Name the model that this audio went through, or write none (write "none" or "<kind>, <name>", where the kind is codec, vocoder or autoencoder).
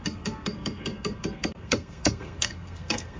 codec, SNAC